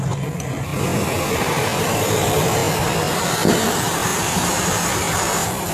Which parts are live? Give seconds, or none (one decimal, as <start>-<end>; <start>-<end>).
0.7-1.3; 2.6-3.1